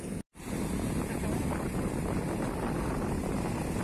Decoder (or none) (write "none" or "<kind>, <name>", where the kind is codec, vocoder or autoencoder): none